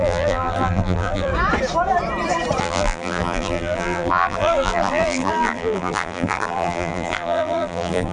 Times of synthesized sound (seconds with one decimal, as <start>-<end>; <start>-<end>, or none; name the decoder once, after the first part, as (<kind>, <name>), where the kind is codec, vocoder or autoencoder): 0.0-1.3 (vocoder, BigVGAN v2); 2.6-8.1